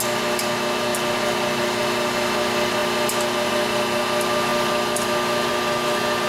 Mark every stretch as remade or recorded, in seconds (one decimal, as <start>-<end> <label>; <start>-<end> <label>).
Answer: 0.0-6.3 recorded